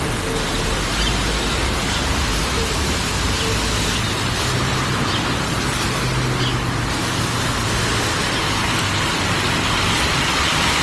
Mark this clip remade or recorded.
recorded